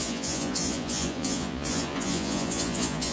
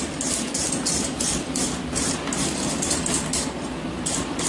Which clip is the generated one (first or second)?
first